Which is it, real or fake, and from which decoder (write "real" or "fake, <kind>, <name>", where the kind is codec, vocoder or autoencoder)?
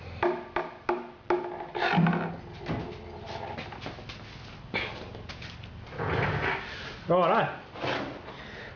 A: real